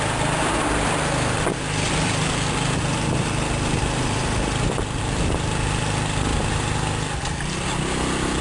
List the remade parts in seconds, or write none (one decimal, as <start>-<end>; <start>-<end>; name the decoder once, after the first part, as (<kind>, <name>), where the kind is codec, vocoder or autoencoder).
none